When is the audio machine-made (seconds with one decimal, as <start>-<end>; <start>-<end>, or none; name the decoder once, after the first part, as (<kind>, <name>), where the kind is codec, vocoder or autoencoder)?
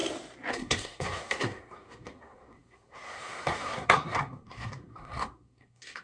0.5-6.0 (codec, SNAC)